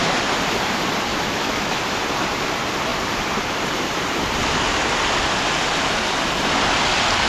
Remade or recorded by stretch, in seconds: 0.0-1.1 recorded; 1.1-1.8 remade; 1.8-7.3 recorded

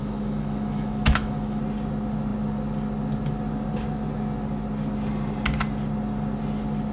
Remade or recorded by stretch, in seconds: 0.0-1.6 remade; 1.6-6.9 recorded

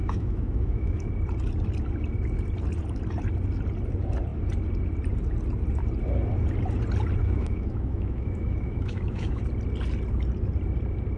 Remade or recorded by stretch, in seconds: 0.0-1.1 remade; 1.1-7.2 recorded; 7.2-9.4 remade; 9.4-11.2 recorded

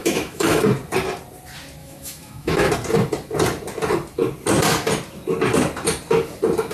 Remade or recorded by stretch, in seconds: 0.0-0.6 remade; 0.6-1.8 recorded; 1.8-2.7 remade; 2.7-6.7 recorded